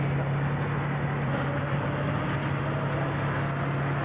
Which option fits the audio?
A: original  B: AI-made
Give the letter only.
A